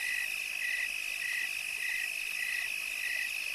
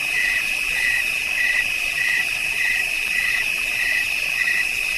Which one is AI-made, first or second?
second